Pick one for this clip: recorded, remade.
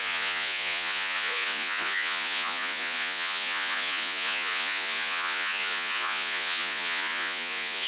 remade